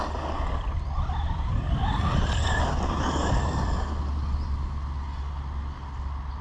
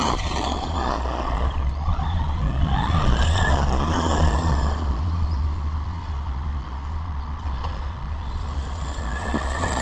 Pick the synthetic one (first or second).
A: second